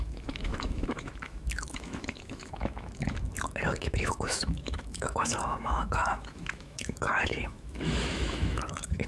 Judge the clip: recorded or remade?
remade